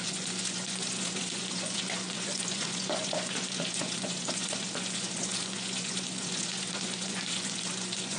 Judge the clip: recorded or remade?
remade